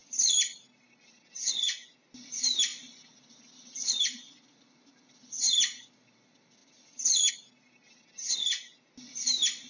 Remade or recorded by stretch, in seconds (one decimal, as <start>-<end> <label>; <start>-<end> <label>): 0.0-1.5 remade; 1.5-2.7 recorded; 2.7-5.2 remade; 5.2-6.6 recorded; 6.6-7.3 remade; 7.3-9.7 recorded